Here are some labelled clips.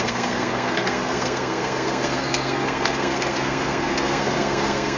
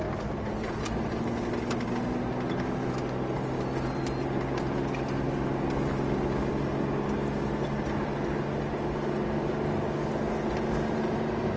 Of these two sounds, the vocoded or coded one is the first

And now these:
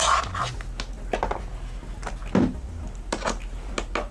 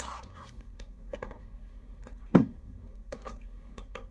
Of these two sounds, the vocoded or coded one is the second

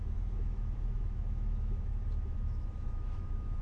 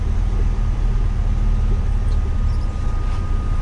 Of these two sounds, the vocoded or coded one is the first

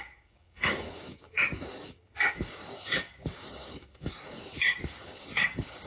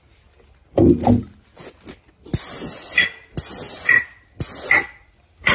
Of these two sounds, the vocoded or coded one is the first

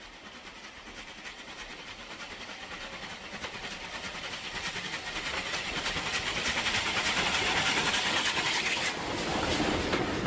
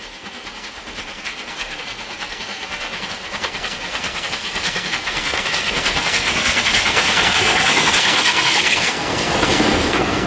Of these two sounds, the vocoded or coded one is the second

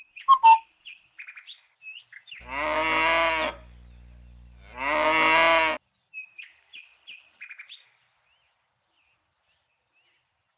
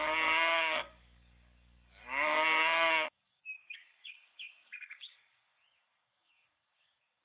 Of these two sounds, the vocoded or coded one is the second